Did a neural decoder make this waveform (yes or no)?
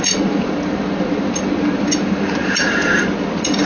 no